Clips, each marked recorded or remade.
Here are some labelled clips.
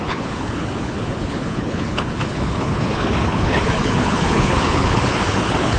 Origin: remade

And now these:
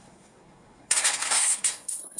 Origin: remade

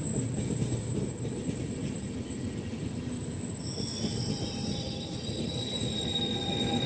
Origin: remade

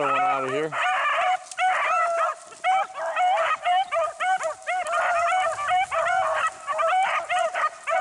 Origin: recorded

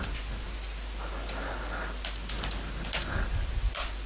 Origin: recorded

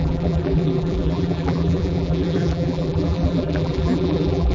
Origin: remade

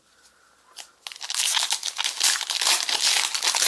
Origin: recorded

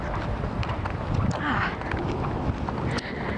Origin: recorded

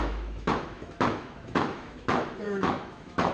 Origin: remade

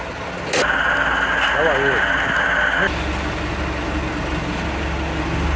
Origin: recorded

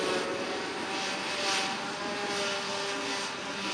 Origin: recorded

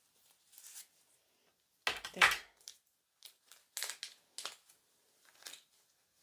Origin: recorded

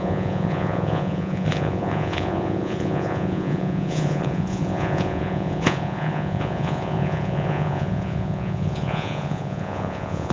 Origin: remade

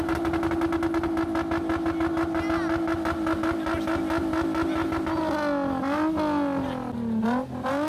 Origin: recorded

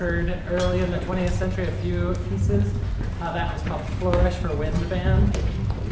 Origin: recorded